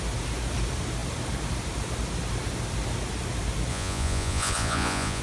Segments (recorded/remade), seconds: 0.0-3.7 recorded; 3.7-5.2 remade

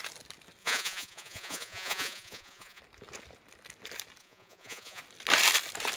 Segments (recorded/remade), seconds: 0.0-0.6 recorded; 0.6-2.8 remade; 2.8-4.2 recorded; 4.2-5.0 remade; 5.0-6.0 recorded

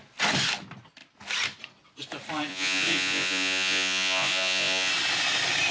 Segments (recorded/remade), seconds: 0.0-2.5 recorded; 2.5-4.9 remade; 4.9-5.7 recorded

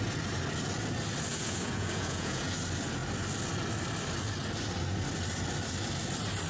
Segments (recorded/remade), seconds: 0.0-1.3 recorded; 1.3-2.5 remade; 2.5-6.5 recorded